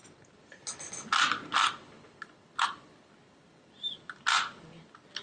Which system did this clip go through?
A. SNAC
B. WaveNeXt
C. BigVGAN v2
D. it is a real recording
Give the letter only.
D